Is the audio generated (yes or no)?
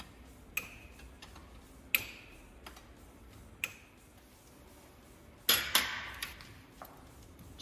no